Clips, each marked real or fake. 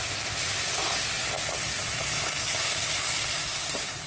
fake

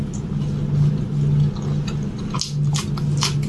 real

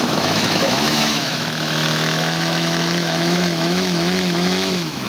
fake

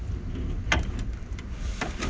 real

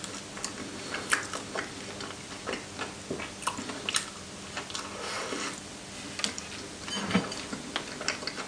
real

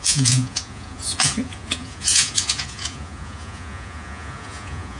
fake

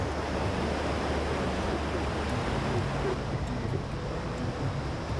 real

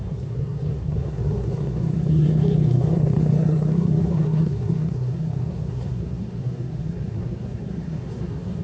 fake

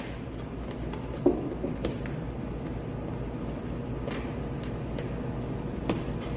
real